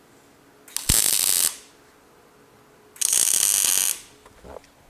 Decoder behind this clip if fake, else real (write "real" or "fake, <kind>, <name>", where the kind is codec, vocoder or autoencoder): real